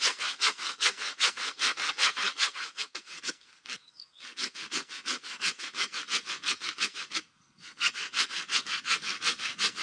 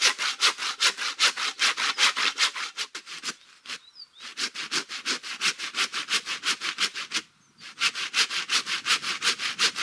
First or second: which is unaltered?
second